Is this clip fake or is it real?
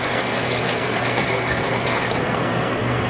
fake